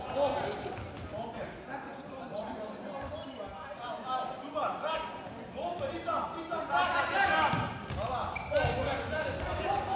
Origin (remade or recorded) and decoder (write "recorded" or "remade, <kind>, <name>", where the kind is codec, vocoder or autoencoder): recorded